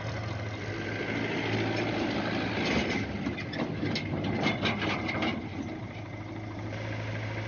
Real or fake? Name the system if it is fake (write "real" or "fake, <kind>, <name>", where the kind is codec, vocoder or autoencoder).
real